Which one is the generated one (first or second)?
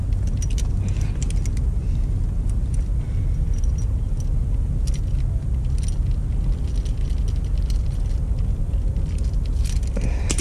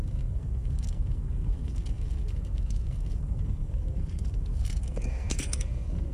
second